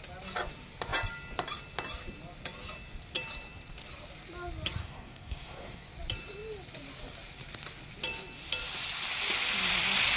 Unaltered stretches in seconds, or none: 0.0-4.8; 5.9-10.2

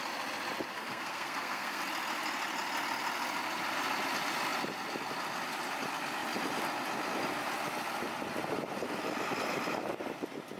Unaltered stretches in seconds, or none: 0.0-0.7; 1.8-10.6

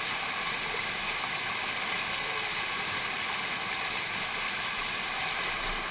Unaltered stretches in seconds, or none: 0.0-2.1; 2.6-5.9

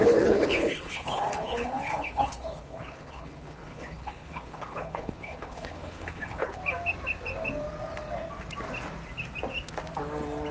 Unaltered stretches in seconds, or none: 6.6-10.5

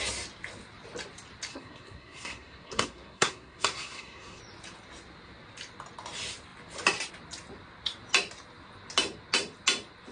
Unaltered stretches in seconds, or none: 0.0-1.5; 4.4-10.1

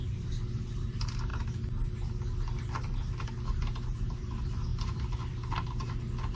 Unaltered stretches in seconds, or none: 0.0-6.4

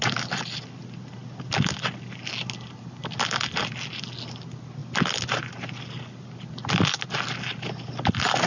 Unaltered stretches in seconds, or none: 0.0-8.5